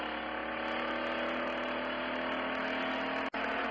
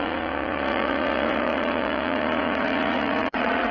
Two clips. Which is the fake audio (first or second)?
second